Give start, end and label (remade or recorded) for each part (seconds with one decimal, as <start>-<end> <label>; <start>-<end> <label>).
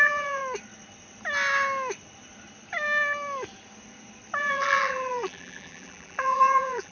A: 0.0-0.4 remade; 0.4-4.4 recorded; 4.4-6.9 remade